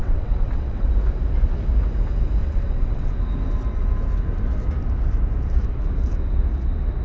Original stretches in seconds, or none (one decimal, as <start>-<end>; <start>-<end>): 0.9-2.4; 3.1-7.0